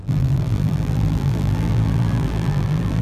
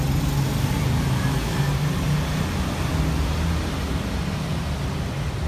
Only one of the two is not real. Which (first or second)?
first